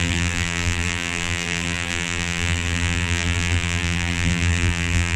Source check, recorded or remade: remade